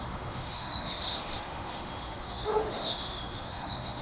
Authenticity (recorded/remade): remade